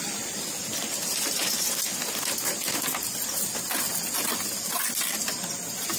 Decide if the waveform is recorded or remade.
recorded